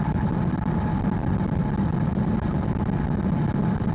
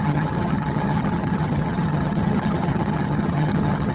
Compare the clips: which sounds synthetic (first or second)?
second